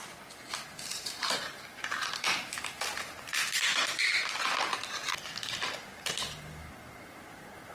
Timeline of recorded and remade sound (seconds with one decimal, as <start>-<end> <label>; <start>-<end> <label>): 0.0-0.9 recorded; 0.9-4.8 remade; 4.8-7.7 recorded